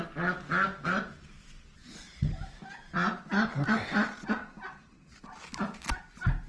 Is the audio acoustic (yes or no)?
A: yes